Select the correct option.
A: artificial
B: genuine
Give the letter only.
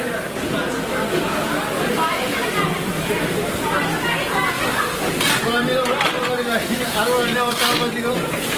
B